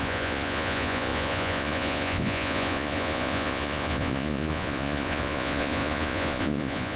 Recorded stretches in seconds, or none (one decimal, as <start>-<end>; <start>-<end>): none